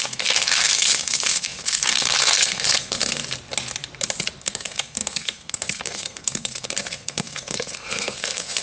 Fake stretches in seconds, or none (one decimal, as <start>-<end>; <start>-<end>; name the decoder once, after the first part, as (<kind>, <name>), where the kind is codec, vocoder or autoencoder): 0.0-3.2 (codec, SNAC); 4.4-8.6